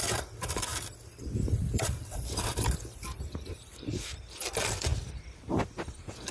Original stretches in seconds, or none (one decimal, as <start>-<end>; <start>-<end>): 4.9-5.6